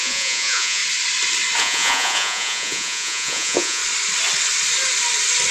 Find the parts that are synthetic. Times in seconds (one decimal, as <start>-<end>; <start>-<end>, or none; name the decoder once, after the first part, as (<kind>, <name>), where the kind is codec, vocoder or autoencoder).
0.0-0.8 (vocoder, Vocos); 1.6-3.8